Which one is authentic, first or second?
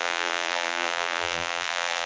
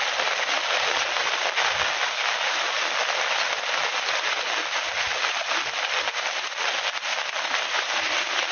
second